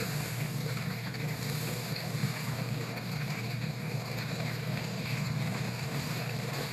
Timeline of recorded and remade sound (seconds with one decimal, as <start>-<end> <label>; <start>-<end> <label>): 0.0-6.7 remade